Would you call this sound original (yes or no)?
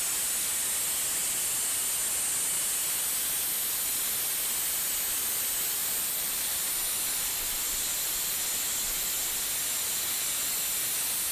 yes